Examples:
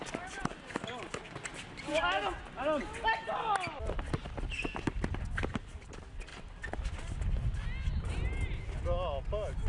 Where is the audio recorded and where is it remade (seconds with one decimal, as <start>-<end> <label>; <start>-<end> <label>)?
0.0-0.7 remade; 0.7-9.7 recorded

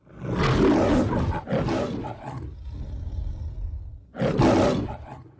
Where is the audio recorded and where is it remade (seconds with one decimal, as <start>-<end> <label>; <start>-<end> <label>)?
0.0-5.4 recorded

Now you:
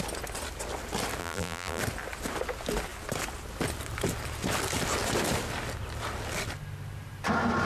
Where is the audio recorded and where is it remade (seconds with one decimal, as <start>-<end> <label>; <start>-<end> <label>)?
0.0-1.2 recorded; 1.2-1.8 remade; 1.8-7.6 recorded

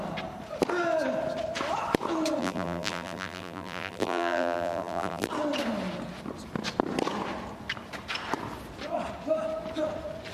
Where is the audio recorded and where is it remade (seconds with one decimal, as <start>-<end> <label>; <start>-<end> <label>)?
0.0-2.4 recorded; 2.4-5.3 remade; 5.3-10.3 recorded